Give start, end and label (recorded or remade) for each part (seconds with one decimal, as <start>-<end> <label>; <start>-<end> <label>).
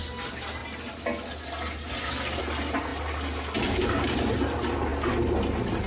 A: 0.0-5.9 recorded